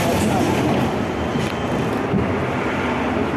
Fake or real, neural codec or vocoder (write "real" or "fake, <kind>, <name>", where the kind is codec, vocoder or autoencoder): fake, vocoder, BigVGAN v2